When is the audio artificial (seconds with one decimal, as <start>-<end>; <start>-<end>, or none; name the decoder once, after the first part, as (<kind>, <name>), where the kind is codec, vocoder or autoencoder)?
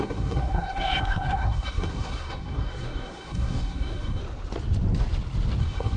0.0-4.2 (codec, SNAC); 5.6-6.0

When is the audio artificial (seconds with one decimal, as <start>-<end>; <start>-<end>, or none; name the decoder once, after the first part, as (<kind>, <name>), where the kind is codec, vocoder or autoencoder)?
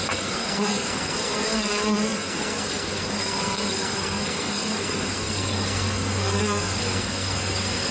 0.0-7.9 (codec, SNAC)